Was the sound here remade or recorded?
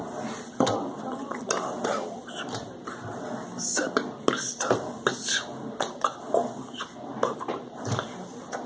recorded